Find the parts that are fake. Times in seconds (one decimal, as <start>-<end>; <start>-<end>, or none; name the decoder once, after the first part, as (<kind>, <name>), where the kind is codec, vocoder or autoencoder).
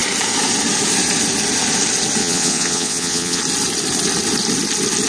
2.2-3.4 (vocoder, Vocos)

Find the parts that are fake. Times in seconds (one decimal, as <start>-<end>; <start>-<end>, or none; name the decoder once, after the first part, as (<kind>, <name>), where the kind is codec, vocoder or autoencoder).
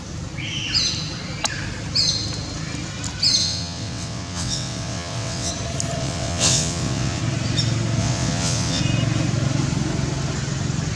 3.4-5.5 (vocoder, WaveNeXt); 6.0-7.2; 8.0-8.8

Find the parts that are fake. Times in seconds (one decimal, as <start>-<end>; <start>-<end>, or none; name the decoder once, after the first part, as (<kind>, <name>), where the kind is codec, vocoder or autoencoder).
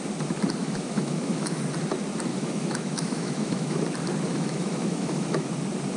0.6-1.6 (autoencoder, DAC-VAE); 2.3-3.8; 4.3-5.5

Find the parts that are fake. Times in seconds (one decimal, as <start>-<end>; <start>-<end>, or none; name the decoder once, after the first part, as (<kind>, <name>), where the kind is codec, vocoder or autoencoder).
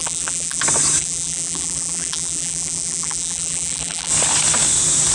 0.0-0.6 (vocoder, BigVGAN v2); 1.0-4.1